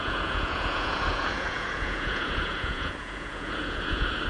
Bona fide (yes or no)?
no